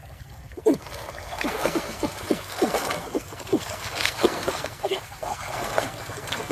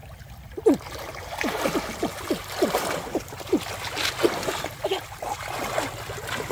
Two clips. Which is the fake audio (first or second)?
first